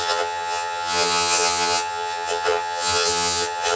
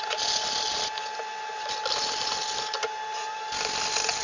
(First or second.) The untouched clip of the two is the second